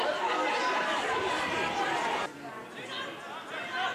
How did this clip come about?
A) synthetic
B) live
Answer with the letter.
B